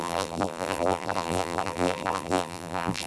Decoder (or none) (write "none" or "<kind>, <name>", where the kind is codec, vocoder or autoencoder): vocoder, BigVGAN v2